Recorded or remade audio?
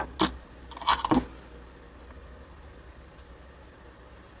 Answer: recorded